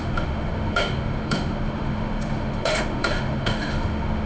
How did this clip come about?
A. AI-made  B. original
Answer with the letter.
A